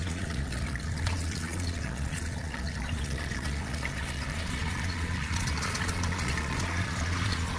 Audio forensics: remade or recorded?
remade